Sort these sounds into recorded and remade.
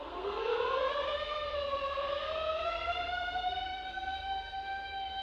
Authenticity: remade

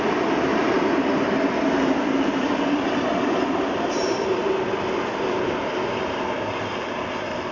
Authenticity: recorded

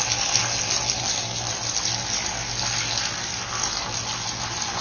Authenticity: recorded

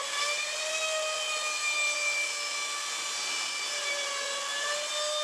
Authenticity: remade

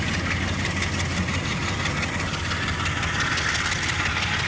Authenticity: recorded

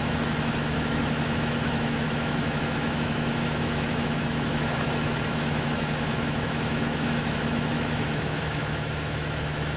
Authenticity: remade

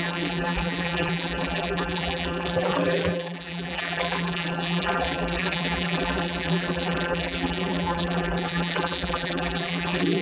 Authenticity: remade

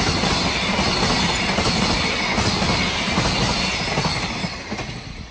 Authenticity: recorded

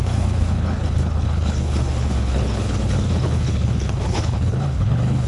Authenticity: remade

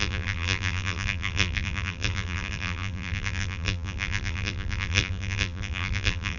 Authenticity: remade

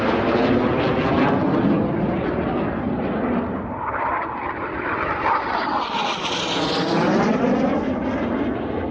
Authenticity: recorded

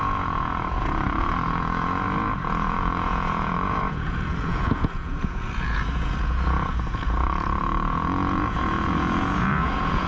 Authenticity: remade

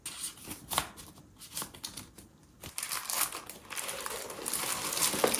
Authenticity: recorded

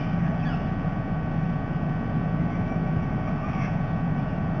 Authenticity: recorded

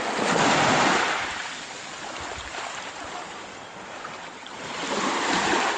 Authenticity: remade